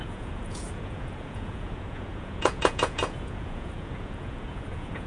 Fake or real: fake